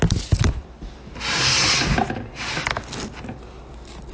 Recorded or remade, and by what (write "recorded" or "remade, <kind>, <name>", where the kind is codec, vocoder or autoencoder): recorded